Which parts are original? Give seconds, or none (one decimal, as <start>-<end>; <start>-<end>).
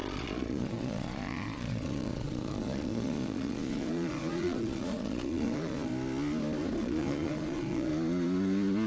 5.9-6.8; 7.9-8.9